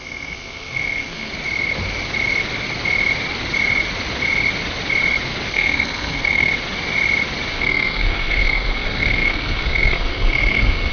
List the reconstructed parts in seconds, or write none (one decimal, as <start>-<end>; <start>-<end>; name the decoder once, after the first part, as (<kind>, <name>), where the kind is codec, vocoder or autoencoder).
0.0-1.3 (codec, SNAC); 5.5-6.5; 7.5-10.9